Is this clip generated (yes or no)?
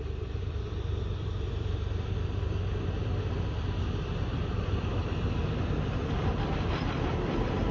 yes